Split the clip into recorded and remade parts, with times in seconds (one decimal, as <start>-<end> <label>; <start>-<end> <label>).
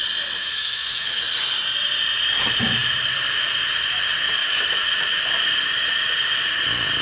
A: 0.0-0.4 recorded; 0.4-1.2 remade; 1.2-4.4 recorded; 4.4-5.2 remade; 5.2-7.0 recorded